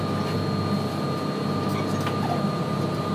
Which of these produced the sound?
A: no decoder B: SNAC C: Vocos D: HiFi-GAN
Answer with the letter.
A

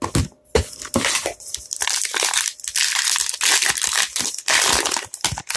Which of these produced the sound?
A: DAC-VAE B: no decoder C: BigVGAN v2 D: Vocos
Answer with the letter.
B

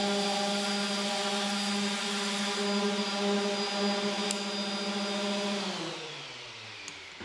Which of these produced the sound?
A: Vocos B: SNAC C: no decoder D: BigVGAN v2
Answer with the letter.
C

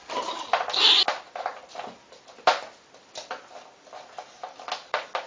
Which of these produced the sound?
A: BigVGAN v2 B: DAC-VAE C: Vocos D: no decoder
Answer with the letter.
D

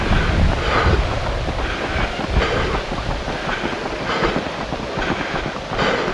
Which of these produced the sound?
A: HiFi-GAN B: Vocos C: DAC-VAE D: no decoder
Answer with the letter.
D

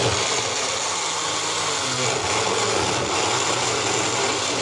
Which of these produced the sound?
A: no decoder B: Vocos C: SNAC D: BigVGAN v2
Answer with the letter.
A